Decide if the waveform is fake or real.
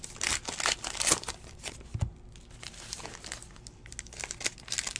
real